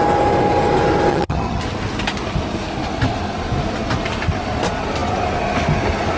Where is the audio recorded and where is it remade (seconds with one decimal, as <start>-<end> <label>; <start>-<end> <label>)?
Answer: 0.0-1.1 recorded; 1.1-1.6 remade; 1.6-6.2 recorded